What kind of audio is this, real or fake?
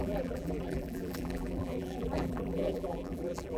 fake